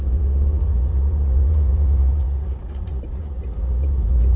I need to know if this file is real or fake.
fake